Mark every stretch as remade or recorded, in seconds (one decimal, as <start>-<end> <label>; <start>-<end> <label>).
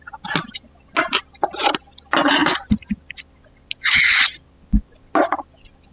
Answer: 0.0-2.4 recorded; 2.4-3.2 remade; 3.2-5.9 recorded